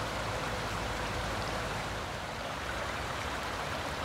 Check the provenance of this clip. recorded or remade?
remade